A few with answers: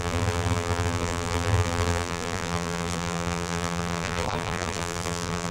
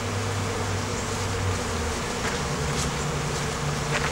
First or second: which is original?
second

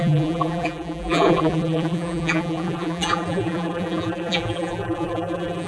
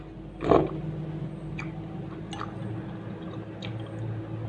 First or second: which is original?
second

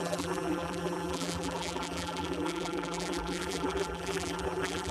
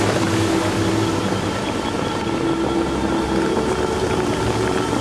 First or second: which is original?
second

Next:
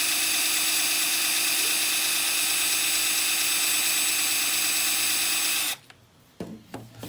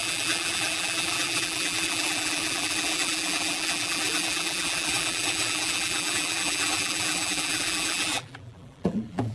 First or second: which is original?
first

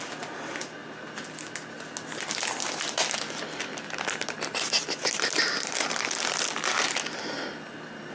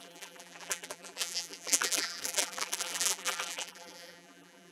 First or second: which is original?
first